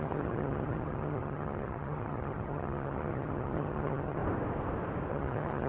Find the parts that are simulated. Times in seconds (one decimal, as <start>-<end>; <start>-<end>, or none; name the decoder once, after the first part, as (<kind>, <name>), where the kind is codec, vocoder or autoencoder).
0.0-4.2 (vocoder, HiFi-GAN); 5.1-5.7